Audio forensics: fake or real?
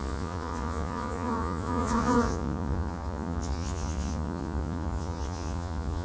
fake